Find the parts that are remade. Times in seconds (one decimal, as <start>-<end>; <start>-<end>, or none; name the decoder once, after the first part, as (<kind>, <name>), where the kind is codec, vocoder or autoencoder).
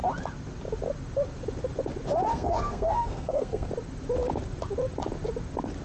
2.3-3.7 (codec, SNAC)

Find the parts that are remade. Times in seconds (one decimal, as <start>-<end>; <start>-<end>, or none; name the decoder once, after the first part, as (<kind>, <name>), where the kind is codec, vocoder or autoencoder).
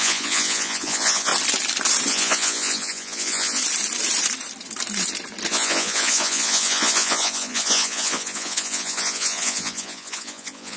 0.0-1.3 (vocoder, Vocos); 2.1-3.6; 5.5-10.8